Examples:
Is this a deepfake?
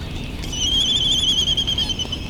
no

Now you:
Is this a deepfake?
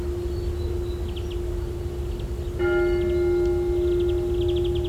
no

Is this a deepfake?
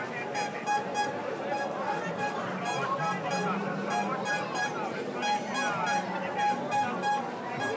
no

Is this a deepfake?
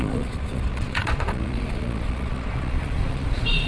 yes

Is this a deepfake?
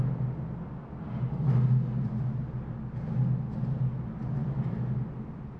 no